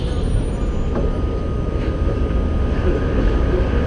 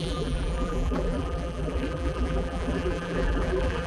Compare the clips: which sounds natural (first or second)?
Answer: first